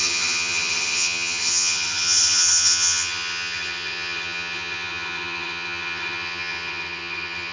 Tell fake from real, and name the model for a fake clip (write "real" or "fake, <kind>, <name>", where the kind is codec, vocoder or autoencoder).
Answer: fake, vocoder, HiFi-GAN